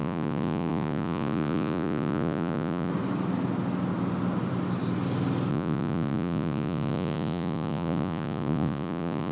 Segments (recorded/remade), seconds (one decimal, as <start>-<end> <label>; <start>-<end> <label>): 0.0-2.9 remade; 2.9-5.5 recorded; 5.5-9.3 remade